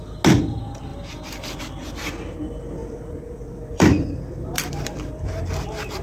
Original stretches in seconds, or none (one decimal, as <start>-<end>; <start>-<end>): 0.0-0.9; 1.6-2.8; 5.4-6.0